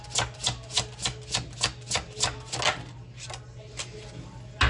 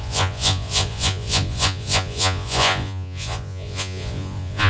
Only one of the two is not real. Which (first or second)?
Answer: second